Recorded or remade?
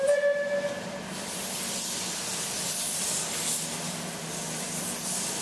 recorded